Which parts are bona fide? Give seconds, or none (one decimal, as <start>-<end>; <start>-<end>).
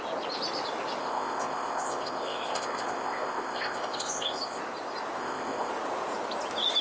0.0-1.0; 4.6-5.2; 5.7-6.8